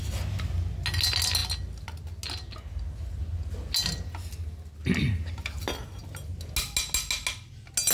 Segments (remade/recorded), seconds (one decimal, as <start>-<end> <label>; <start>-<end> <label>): 0.0-7.9 recorded